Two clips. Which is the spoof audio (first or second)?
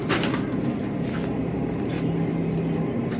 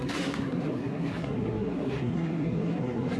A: second